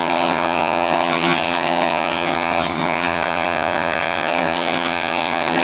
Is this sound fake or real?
fake